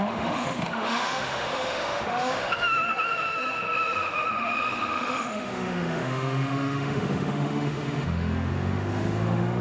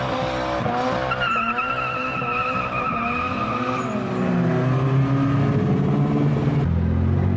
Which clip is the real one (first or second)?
second